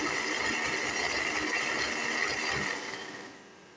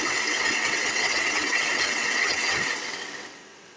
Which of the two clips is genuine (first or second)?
first